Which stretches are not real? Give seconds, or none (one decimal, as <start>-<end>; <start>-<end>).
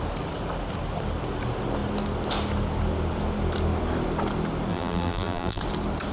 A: 4.7-5.6